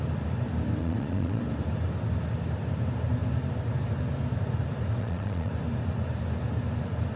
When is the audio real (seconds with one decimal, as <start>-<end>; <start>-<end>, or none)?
0.0-0.8; 1.4-5.0; 5.5-7.2